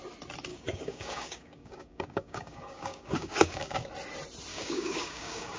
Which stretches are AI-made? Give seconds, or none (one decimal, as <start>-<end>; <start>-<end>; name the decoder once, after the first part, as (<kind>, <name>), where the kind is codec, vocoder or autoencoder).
0.5-3.9 (codec, DAC); 4.5-5.6